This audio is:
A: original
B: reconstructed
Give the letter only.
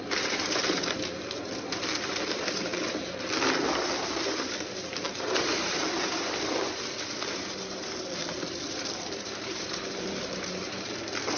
B